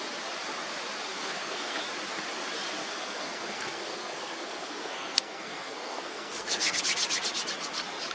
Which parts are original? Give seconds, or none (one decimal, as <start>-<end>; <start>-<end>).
0.0-1.1; 1.8-2.8; 6.8-8.1